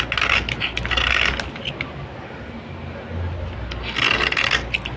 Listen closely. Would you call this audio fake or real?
real